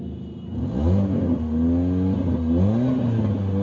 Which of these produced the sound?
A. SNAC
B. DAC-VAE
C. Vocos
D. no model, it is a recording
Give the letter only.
D